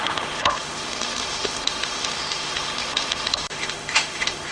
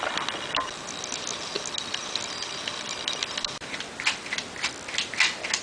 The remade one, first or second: first